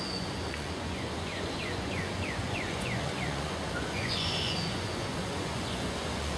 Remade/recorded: remade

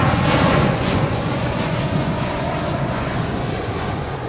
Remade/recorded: remade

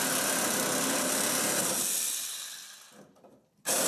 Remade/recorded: recorded